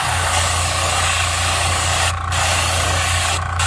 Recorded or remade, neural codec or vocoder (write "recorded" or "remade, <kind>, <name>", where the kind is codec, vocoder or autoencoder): remade, codec, DAC